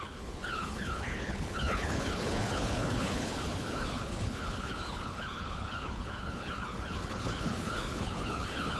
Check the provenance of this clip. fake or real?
fake